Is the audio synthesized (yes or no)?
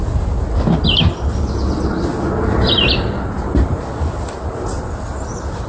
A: no